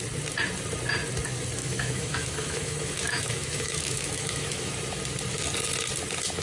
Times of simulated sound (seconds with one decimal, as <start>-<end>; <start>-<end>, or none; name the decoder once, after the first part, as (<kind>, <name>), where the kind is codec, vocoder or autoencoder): 1.6-4.7 (autoencoder, DAC-VAE)